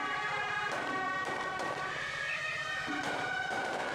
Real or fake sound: fake